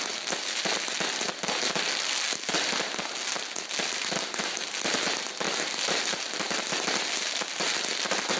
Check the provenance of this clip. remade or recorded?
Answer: recorded